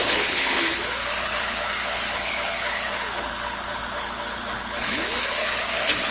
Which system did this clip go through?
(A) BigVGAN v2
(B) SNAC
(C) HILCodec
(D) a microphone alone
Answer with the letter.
C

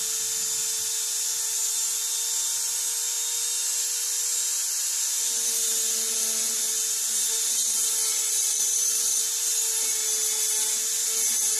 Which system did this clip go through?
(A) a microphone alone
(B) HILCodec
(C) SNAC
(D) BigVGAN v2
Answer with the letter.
A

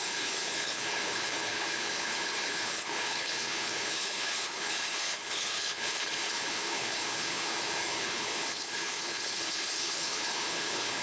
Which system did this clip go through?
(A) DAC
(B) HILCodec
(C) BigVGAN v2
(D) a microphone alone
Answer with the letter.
B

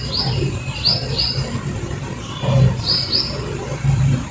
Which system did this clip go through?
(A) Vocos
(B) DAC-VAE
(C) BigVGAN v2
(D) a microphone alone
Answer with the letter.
C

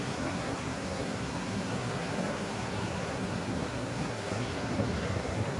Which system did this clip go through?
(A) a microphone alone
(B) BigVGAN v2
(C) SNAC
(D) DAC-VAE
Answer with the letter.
C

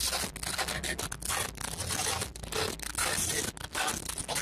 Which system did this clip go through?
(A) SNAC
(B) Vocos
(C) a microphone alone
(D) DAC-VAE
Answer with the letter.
C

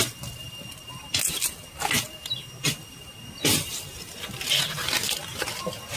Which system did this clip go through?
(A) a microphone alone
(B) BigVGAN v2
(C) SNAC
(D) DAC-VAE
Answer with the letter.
A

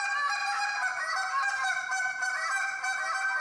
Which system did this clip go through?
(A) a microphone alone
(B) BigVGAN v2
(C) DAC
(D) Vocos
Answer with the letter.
B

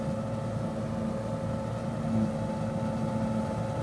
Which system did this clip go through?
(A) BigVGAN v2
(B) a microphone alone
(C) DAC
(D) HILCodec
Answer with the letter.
B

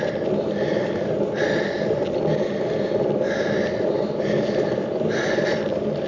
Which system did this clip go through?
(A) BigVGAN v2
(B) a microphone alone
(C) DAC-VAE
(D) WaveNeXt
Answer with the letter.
B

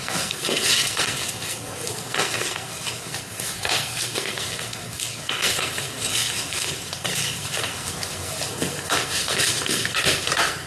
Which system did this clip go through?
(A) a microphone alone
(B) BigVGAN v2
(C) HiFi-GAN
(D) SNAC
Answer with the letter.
D